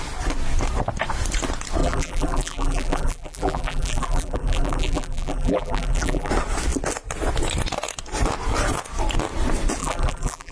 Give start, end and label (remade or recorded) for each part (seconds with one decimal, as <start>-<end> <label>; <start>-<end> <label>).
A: 0.0-1.8 recorded; 1.8-6.3 remade; 6.3-9.8 recorded; 9.8-10.5 remade